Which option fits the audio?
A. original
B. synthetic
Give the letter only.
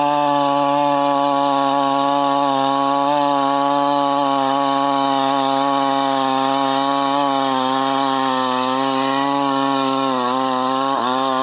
A